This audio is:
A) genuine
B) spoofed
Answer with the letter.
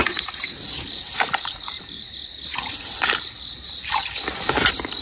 B